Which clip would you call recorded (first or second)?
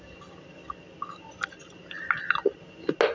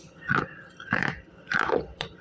first